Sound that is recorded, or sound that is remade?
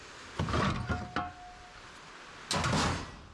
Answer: recorded